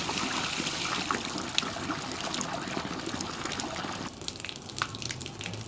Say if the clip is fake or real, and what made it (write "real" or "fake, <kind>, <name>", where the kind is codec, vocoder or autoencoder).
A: real